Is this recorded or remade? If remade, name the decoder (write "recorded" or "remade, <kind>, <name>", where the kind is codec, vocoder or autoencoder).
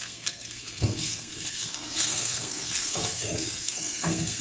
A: remade, codec, SNAC